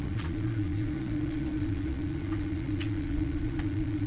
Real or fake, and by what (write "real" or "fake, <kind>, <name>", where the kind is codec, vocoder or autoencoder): fake, vocoder, Vocos